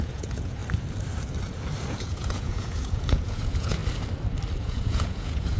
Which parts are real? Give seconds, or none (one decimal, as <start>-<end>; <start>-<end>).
0.6-1.9; 3.8-4.6